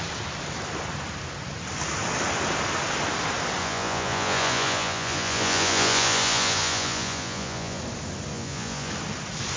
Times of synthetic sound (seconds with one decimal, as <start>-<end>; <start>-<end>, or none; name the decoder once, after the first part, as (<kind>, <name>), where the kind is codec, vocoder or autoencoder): 3.6-7.8 (vocoder, Vocos); 8.3-8.9